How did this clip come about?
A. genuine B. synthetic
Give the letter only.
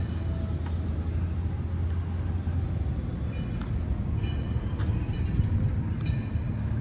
A